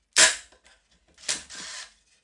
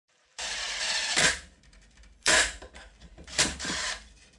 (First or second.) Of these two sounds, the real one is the first